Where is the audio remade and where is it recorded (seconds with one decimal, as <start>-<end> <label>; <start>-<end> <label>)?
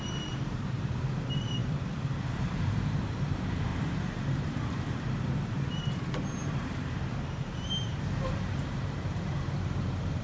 0.0-10.2 remade